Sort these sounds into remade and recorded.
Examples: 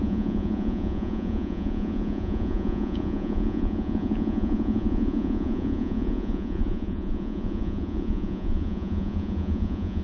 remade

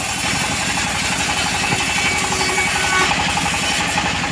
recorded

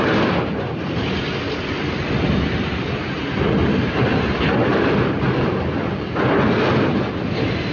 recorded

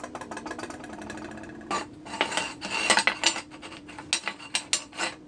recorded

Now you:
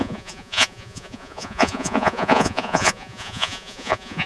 remade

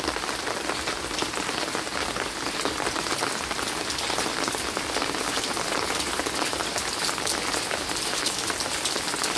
recorded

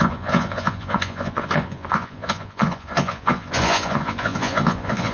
remade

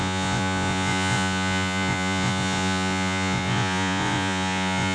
remade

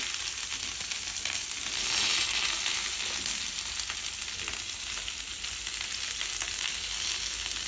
recorded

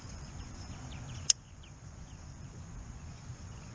remade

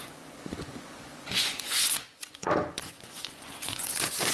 remade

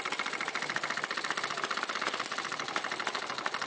recorded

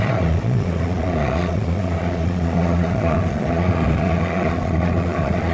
remade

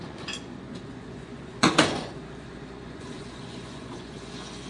remade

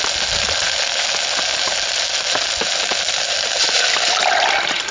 recorded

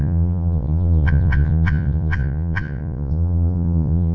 remade